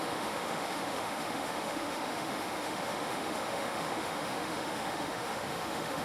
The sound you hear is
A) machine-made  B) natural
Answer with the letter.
A